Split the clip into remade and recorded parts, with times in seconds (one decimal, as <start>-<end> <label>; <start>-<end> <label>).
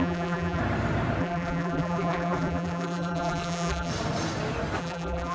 0.0-0.6 remade; 0.6-1.2 recorded; 1.2-3.9 remade; 3.9-4.8 recorded; 4.8-5.3 remade